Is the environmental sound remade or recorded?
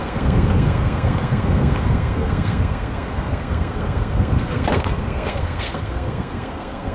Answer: remade